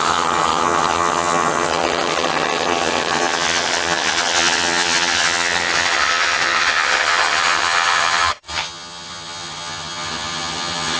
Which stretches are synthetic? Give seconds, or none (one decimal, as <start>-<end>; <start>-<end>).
0.0-11.0